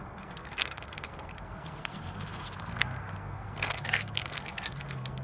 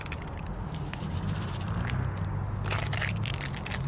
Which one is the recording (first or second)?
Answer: second